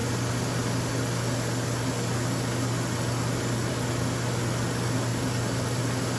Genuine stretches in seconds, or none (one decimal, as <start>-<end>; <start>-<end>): 0.0-5.1; 5.8-6.2